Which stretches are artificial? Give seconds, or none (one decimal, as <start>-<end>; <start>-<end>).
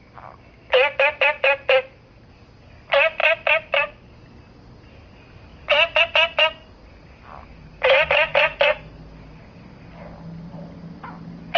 none